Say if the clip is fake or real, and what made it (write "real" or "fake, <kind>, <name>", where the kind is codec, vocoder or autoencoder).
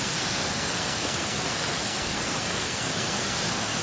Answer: fake, codec, SNAC